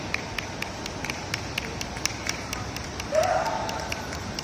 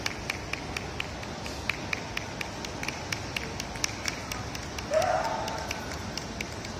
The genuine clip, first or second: second